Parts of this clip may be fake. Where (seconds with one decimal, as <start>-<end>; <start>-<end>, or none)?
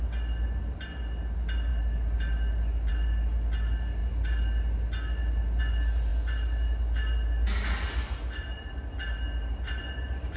none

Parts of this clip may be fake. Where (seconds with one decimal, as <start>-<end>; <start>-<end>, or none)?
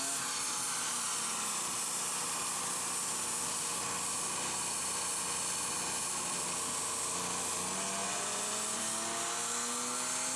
8.0-8.8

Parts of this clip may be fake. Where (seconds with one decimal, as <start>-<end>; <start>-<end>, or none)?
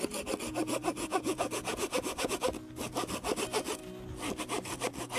0.8-2.3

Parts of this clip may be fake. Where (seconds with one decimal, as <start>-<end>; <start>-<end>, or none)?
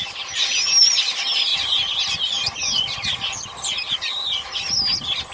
none